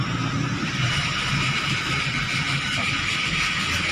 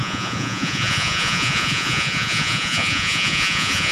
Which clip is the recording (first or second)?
first